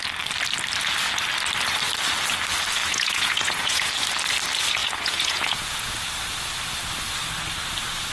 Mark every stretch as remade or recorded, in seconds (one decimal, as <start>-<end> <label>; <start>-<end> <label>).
0.0-2.8 recorded; 2.8-3.9 remade; 3.9-4.8 recorded; 4.8-5.9 remade; 5.9-8.1 recorded